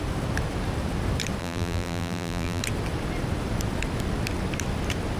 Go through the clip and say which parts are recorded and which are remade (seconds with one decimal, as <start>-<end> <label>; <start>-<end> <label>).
0.0-1.4 recorded; 1.4-2.6 remade; 2.6-5.2 recorded